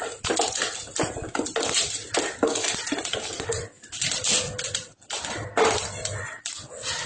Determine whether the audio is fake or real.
real